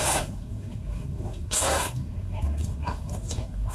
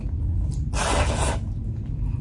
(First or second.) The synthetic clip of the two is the first